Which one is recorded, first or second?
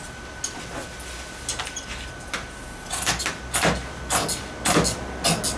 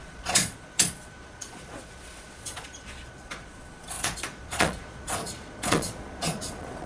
first